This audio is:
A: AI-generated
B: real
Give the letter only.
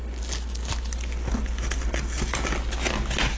B